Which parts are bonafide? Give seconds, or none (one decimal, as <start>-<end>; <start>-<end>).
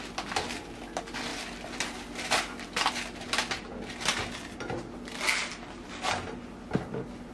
0.0-7.3